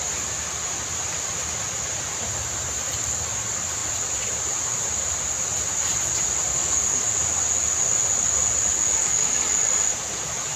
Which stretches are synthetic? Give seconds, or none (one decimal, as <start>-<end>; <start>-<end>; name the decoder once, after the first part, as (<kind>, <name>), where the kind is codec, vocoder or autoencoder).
6.5-7.1 (codec, DAC); 9.0-9.6